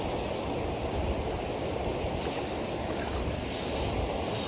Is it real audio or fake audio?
real